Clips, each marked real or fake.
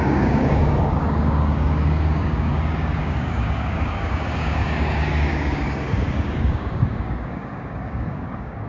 fake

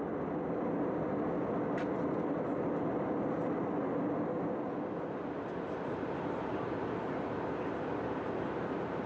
real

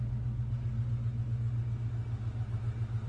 real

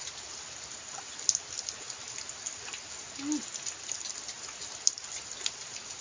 real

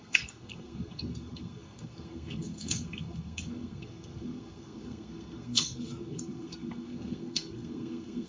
fake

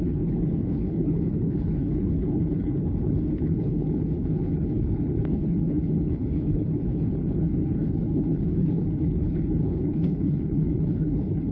fake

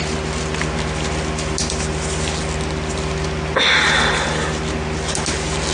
real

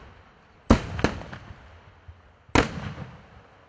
real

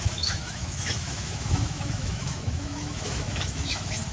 fake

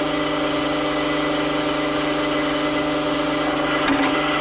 real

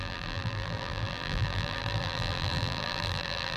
fake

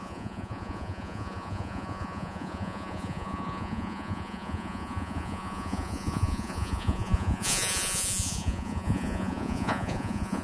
fake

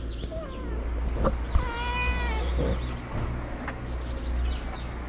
real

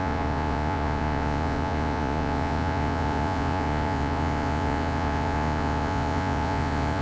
fake